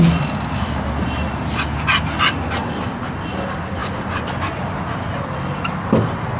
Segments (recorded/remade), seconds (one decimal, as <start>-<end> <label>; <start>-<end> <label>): 0.0-6.4 recorded